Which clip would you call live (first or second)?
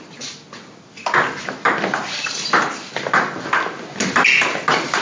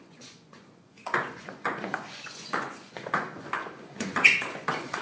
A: first